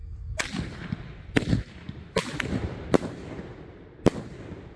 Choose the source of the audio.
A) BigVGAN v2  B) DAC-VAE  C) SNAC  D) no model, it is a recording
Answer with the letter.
D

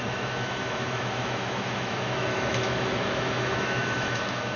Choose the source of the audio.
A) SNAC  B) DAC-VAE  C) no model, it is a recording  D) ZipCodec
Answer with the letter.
B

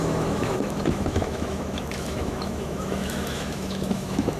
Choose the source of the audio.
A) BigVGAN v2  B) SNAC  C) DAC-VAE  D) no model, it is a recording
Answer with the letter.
C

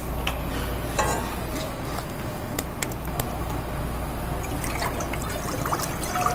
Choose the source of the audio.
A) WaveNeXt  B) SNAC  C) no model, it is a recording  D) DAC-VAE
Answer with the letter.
C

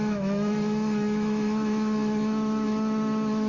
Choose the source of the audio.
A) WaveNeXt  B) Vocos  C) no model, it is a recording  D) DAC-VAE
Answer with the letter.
D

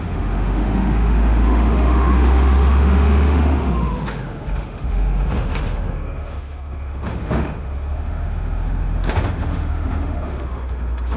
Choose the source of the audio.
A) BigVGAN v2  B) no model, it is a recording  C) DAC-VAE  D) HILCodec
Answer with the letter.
C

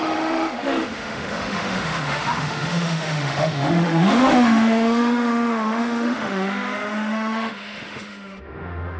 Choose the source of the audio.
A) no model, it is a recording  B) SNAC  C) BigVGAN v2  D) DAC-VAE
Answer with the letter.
D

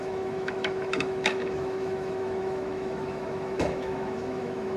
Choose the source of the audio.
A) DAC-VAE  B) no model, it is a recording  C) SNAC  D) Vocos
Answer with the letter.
A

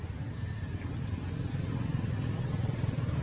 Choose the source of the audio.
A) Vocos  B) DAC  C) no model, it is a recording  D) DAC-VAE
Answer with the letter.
C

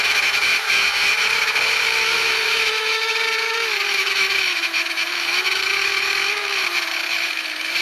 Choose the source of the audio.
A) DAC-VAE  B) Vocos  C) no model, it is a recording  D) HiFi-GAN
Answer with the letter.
A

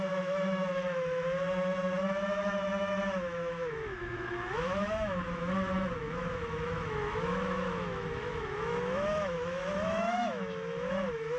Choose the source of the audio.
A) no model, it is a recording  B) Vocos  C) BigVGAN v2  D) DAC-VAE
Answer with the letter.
D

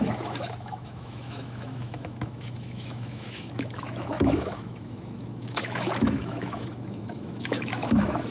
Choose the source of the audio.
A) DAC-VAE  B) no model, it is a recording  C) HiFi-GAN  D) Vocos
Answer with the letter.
A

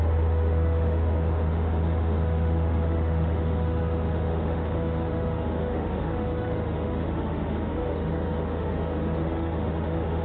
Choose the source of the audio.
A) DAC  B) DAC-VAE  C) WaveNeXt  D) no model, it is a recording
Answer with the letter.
B